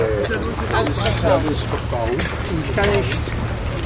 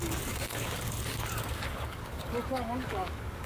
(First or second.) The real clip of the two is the first